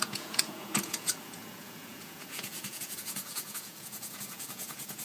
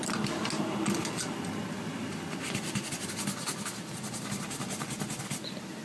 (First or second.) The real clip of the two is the second